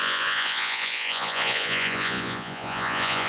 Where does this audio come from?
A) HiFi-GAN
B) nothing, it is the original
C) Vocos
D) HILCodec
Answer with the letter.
C